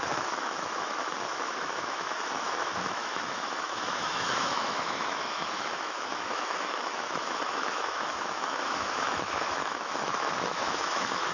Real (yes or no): no